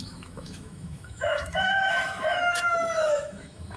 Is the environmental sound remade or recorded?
remade